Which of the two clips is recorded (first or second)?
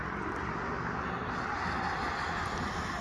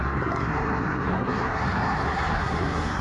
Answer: first